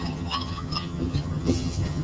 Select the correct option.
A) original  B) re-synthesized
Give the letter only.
B